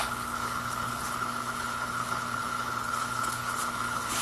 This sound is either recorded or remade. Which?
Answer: remade